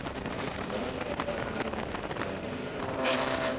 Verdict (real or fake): fake